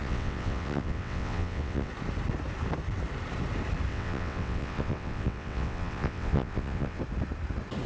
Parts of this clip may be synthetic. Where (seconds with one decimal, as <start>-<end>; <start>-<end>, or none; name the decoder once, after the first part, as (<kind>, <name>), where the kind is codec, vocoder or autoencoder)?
0.0-1.9 (vocoder, WaveNeXt); 3.9-7.0